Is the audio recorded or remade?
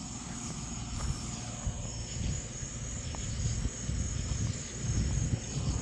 recorded